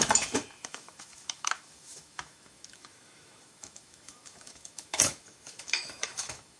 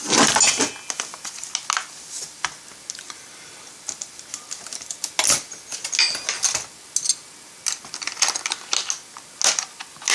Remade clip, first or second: first